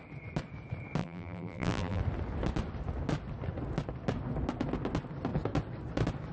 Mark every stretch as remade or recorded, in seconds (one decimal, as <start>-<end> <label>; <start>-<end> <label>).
0.0-1.0 recorded; 1.0-2.0 remade; 2.0-6.3 recorded

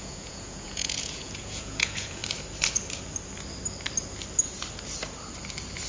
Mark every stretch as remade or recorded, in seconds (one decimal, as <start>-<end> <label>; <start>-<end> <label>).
0.0-2.2 remade; 2.2-5.9 recorded

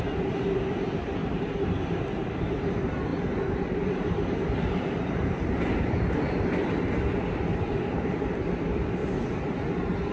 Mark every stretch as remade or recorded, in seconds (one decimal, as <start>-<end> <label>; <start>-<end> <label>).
0.0-1.2 recorded; 1.2-2.6 remade; 2.6-3.1 recorded; 3.1-6.1 remade; 6.1-7.5 recorded; 7.5-8.2 remade; 8.2-10.1 recorded

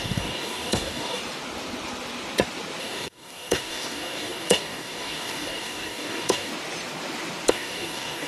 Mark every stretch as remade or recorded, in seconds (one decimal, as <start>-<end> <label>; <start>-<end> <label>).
0.0-1.2 remade; 1.2-2.8 recorded; 2.8-6.5 remade; 6.5-7.5 recorded; 7.5-8.3 remade